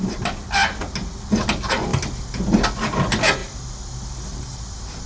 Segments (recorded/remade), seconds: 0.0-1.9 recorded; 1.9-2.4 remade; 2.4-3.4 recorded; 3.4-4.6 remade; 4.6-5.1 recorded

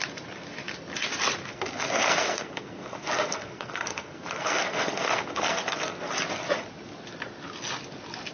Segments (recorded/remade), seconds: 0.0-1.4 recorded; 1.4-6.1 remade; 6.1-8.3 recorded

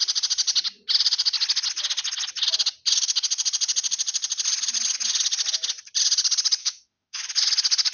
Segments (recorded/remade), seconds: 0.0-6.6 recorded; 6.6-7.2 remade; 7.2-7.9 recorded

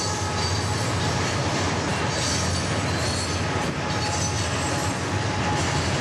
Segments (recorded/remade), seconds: 0.0-4.8 recorded; 4.8-5.4 remade; 5.4-6.0 recorded